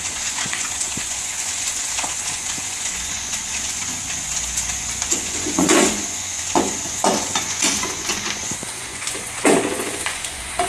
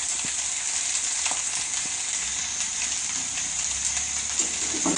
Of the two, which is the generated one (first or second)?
first